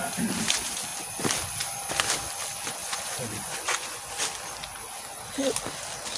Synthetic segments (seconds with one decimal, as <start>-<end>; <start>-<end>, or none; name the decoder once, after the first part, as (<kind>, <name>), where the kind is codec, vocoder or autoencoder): 2.8-4.1 (vocoder, Vocos)